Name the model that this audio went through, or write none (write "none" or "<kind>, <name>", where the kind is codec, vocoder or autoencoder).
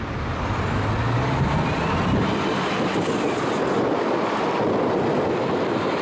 none